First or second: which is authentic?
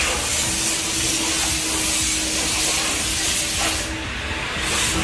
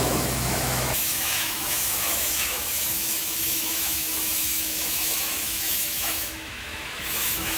first